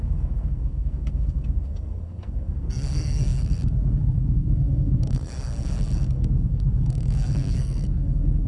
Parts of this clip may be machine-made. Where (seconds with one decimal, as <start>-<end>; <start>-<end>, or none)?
0.0-8.5